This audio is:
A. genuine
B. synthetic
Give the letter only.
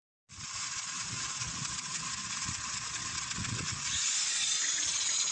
B